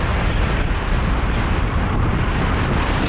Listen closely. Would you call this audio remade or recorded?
recorded